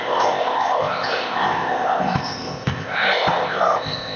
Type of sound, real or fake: fake